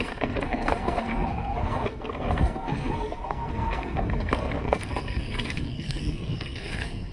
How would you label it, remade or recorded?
remade